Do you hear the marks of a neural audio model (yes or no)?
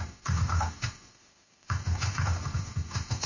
yes